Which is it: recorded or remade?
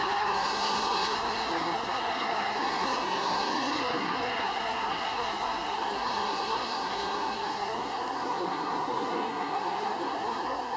remade